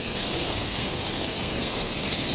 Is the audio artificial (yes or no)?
yes